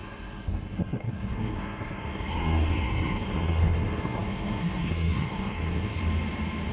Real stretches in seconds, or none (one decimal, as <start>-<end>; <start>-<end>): 6.0-6.7